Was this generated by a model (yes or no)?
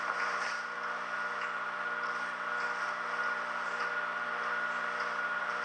no